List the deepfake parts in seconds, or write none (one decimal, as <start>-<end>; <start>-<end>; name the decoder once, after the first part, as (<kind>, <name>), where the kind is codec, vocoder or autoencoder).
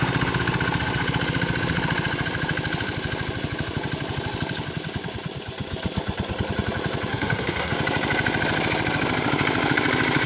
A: 7.1-7.7 (codec, SNAC)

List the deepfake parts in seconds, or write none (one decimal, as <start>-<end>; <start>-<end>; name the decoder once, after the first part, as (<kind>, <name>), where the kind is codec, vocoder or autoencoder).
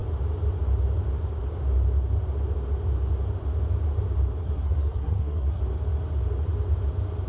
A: 4.4-5.6 (codec, SNAC)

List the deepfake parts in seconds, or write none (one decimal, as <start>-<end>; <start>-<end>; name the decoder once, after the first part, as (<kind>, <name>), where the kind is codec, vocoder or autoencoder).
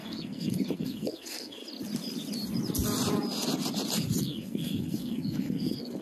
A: 0.0-1.6 (codec, SNAC); 4.2-6.0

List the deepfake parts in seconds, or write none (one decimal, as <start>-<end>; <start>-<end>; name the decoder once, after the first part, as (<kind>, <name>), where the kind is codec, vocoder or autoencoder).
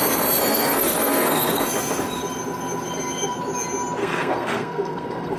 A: 0.4-1.6 (codec, SNAC); 4.0-5.4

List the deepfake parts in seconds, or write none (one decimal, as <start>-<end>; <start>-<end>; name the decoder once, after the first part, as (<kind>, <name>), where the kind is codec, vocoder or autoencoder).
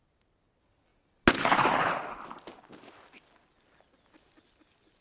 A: none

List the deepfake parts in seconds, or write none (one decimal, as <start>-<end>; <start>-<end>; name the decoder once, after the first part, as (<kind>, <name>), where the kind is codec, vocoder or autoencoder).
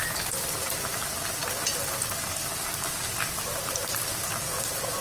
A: none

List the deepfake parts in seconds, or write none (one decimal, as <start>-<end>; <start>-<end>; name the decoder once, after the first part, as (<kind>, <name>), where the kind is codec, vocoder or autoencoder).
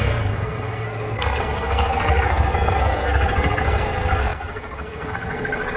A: 0.0-5.8 (codec, SNAC)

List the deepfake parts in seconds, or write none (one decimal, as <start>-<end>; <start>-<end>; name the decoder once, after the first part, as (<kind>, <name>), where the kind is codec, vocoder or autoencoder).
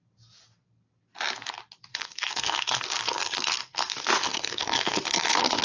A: 1.9-5.6 (codec, SNAC)